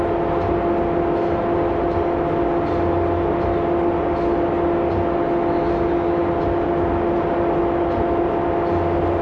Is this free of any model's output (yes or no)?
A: yes